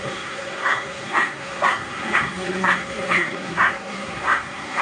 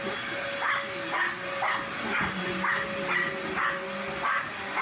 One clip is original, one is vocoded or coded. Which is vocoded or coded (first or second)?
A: first